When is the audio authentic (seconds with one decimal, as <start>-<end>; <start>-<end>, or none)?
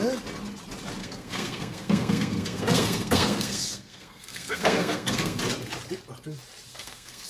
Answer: 0.0-1.0; 5.4-6.7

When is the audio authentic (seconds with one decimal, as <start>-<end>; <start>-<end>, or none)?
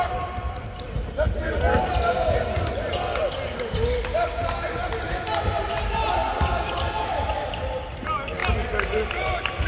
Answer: 0.0-9.7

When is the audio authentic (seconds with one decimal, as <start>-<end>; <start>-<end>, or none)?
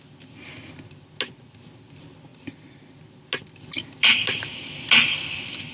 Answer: 0.0-5.7